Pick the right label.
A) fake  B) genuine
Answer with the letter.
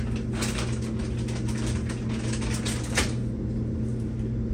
B